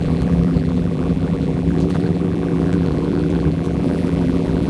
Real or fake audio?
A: fake